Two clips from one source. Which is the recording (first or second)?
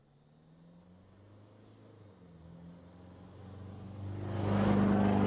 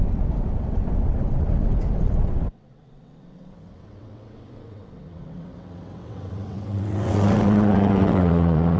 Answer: first